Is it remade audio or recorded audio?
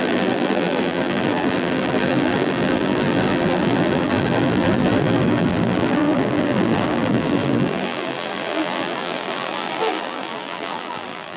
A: remade